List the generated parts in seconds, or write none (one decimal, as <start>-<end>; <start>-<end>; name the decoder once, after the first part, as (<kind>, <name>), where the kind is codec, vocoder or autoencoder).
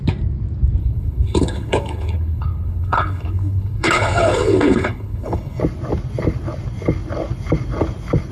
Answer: 0.8-5.6 (codec, HILCodec)